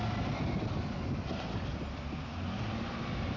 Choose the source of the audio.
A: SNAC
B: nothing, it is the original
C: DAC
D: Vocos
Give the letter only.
B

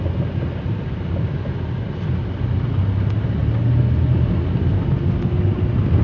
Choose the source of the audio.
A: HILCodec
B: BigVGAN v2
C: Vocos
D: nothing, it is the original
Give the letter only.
D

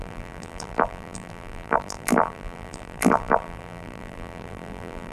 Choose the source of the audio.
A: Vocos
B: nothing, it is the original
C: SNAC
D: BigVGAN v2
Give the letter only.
D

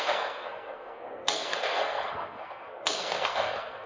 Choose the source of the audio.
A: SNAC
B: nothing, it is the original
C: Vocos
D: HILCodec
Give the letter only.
A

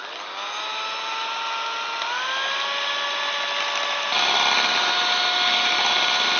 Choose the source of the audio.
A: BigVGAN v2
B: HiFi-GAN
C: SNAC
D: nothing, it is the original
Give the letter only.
D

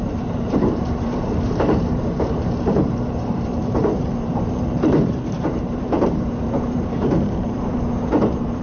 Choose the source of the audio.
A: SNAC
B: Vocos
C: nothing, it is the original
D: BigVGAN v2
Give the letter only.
D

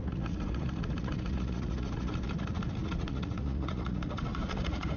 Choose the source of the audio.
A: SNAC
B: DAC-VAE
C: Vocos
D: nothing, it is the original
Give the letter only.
C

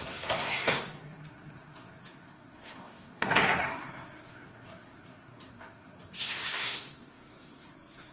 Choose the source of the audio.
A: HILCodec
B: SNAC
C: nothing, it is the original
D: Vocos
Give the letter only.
B